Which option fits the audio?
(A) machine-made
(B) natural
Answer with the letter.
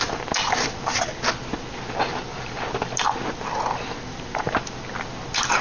B